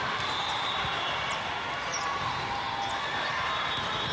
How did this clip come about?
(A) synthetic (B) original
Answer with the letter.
A